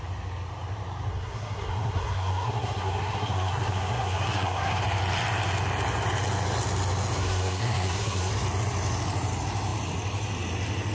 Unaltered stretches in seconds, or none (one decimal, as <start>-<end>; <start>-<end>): 0.0-1.1; 4.8-7.2; 8.3-10.9